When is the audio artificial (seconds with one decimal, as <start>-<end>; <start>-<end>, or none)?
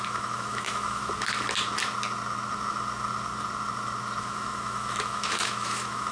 0.0-1.0; 4.2-6.1